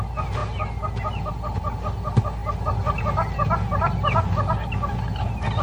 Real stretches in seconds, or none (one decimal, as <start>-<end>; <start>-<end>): 0.0-5.6